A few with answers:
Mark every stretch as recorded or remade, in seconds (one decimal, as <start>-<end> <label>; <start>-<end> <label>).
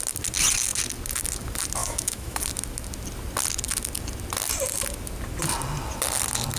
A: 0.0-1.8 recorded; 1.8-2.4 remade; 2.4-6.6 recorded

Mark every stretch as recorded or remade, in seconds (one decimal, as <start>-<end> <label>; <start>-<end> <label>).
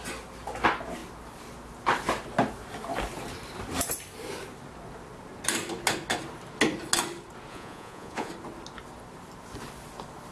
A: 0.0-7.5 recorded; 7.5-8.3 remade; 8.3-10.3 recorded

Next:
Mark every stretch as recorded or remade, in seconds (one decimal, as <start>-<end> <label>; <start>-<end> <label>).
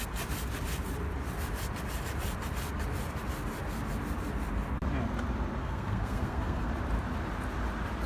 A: 0.0-5.6 recorded; 5.6-6.7 remade; 6.7-8.1 recorded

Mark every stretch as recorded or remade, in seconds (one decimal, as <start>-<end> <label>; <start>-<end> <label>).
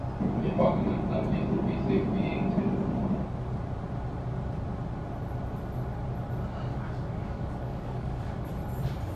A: 0.0-6.7 recorded; 6.7-8.5 remade; 8.5-9.2 recorded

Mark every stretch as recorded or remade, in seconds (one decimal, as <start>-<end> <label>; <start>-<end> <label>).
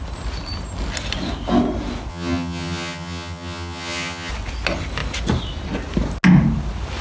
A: 0.0-2.1 recorded; 2.1-4.3 remade; 4.3-7.0 recorded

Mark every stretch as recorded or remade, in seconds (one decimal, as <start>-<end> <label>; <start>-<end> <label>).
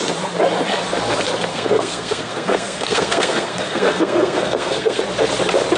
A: 0.0-1.5 recorded; 1.5-5.0 remade; 5.0-5.8 recorded